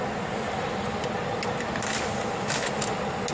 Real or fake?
real